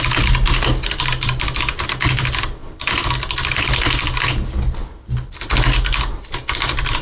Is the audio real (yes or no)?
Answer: yes